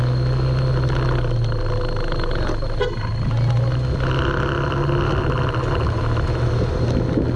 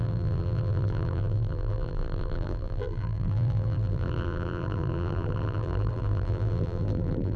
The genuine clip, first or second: first